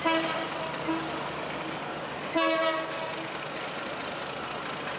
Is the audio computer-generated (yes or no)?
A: no